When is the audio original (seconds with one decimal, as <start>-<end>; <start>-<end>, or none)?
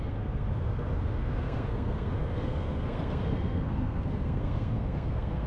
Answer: none